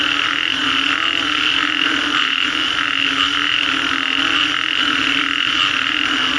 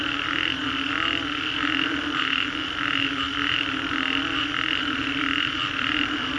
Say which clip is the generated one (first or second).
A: second